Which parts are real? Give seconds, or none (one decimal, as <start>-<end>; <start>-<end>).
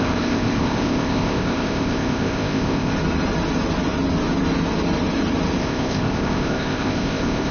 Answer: 2.9-5.6